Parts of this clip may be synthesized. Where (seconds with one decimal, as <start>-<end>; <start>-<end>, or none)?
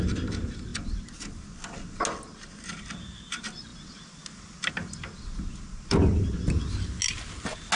0.0-0.7; 2.7-3.7